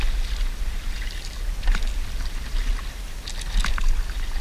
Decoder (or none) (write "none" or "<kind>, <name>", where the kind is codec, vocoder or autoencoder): none